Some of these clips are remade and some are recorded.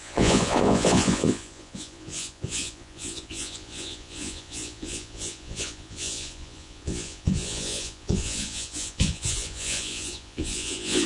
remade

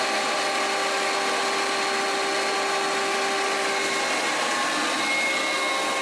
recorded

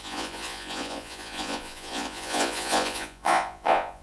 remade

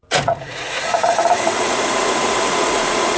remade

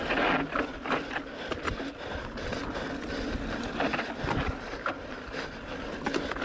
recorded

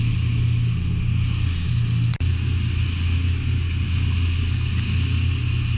recorded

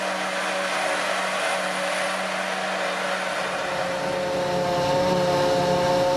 recorded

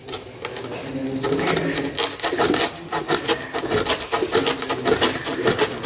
recorded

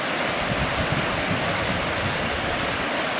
recorded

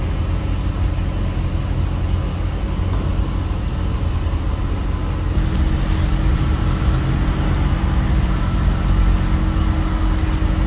recorded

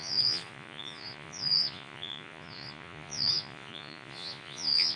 remade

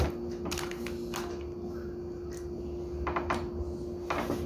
recorded